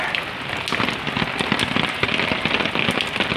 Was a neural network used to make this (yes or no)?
no